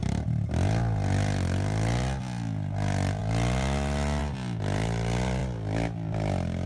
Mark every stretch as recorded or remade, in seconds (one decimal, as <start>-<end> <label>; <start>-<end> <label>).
0.0-0.5 remade; 0.5-6.7 recorded